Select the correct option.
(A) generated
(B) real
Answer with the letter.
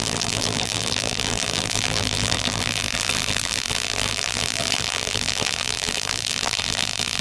A